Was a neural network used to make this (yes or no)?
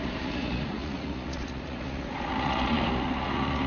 yes